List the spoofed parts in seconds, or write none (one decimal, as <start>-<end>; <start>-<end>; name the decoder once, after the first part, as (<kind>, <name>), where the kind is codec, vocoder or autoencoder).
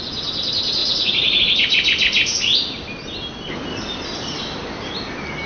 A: 0.8-1.4 (vocoder, Vocos)